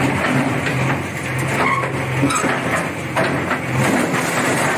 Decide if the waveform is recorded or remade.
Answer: recorded